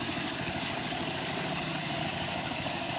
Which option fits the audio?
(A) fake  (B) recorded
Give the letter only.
A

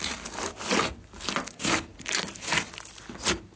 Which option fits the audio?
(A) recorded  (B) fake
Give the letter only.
A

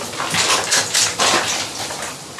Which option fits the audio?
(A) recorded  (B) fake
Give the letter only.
A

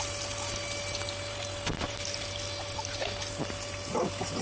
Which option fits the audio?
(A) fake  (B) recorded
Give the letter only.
B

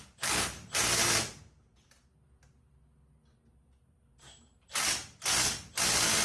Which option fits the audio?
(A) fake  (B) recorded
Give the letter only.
B